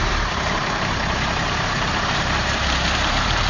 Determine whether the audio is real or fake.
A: fake